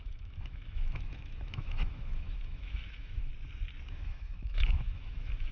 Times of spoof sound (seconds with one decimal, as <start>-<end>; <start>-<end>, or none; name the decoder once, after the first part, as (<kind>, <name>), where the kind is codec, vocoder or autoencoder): 0.0-3.3 (autoencoder, DAC-VAE); 3.9-5.5

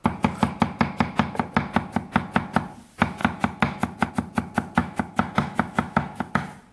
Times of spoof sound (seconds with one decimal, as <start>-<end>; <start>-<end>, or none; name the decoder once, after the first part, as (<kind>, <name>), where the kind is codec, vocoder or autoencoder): 4.8-6.3 (autoencoder, DAC-VAE)

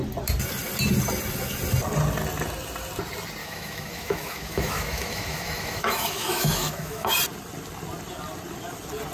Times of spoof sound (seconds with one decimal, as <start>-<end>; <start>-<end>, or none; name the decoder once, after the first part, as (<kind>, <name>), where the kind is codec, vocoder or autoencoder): 3.4-7.1 (autoencoder, DAC-VAE)

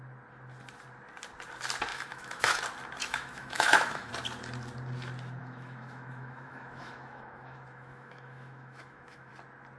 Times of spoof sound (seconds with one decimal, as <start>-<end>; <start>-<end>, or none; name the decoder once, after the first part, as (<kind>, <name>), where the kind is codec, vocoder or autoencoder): 1.9-2.6 (autoencoder, DAC-VAE); 3.0-4.1; 5.4-9.3

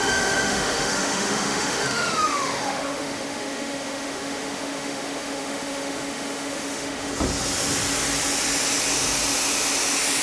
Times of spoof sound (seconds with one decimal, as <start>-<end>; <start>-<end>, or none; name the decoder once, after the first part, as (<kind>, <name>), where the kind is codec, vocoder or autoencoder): 0.0-7.1 (autoencoder, DAC-VAE)

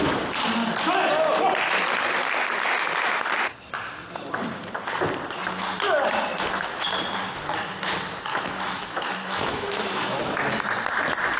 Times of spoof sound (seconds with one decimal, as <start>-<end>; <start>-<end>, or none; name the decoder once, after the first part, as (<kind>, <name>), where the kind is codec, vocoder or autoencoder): 8.3-10.2 (autoencoder, DAC-VAE)